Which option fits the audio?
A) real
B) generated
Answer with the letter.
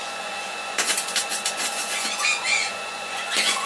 B